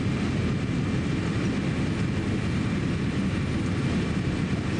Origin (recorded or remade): recorded